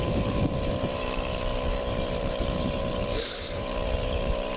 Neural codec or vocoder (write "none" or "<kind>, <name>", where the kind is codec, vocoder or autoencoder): vocoder, BigVGAN v2